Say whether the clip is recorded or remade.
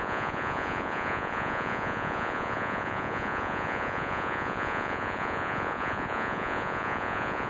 remade